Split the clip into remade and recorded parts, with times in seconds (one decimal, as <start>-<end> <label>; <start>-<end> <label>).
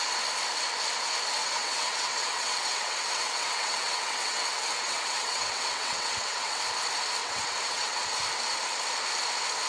0.0-1.4 recorded; 1.4-6.6 remade; 6.6-7.2 recorded; 7.2-8.0 remade; 8.0-9.7 recorded